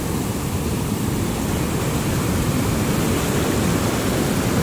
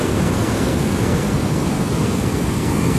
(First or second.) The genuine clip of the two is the first